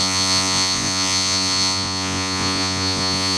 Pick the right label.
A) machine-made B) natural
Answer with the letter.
A